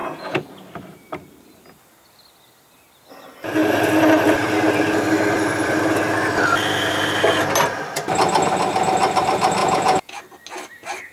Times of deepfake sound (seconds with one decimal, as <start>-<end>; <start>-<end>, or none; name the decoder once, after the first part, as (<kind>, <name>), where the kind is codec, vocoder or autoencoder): 0.0-0.5 (vocoder, Vocos); 9.6-10.2